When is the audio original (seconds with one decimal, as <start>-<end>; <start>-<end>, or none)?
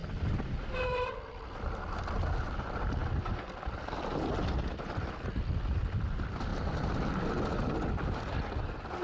1.2-9.0